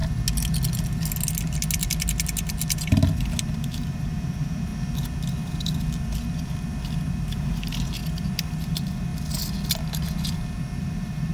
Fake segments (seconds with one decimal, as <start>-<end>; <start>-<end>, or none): 3.5-4.7; 7.1-8.0; 8.6-9.1; 10.8-11.3